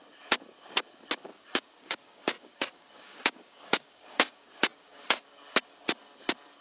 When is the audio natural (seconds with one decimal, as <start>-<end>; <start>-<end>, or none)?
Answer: 0.0-1.3; 5.3-6.6